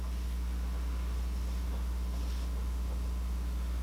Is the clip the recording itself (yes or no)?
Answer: yes